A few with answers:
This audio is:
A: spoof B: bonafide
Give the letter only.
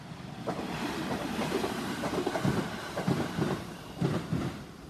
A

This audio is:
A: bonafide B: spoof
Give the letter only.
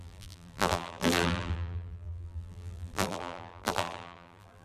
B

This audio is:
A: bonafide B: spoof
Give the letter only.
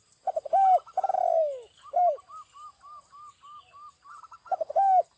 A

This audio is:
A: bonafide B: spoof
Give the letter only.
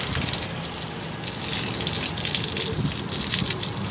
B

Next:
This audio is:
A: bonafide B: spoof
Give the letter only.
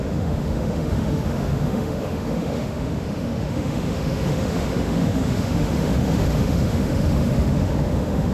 B